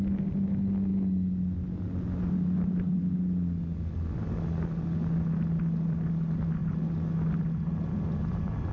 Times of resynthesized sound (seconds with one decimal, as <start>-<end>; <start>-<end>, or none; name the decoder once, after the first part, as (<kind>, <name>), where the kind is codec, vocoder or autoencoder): none